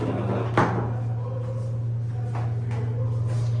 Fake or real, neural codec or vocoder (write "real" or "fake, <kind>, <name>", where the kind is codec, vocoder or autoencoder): real